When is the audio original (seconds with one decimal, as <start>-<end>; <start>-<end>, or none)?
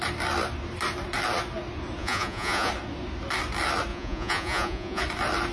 0.0-2.0; 2.7-3.9; 5.0-5.5